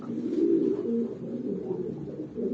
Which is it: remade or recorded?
recorded